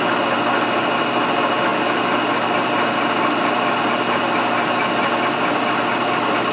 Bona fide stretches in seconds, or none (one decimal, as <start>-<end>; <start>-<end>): 0.0-6.5